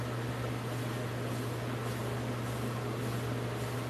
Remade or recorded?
recorded